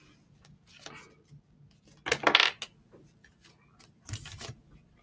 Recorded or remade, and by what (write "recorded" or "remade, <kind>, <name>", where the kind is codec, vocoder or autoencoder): recorded